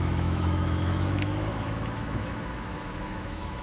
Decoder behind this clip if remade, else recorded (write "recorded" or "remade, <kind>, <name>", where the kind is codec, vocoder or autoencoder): remade, autoencoder, DAC-VAE